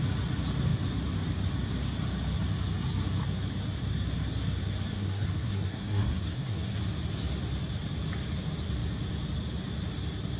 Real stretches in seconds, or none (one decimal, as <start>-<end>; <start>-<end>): 0.0-4.9; 6.8-10.4